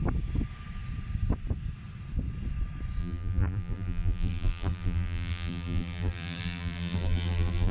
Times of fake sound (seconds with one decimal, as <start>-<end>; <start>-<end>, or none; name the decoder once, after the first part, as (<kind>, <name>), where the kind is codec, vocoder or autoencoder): 3.0-7.7 (vocoder, BigVGAN v2)